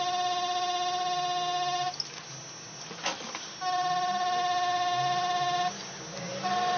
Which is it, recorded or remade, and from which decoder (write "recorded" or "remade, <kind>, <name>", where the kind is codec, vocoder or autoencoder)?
recorded